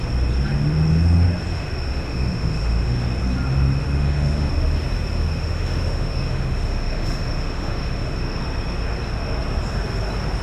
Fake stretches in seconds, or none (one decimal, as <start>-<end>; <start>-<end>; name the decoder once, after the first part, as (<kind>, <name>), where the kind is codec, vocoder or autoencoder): 1.5-3.0 (autoencoder, DAC-VAE); 3.8-4.5; 5.2-8.4